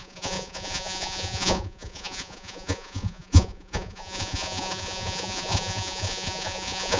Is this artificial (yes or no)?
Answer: yes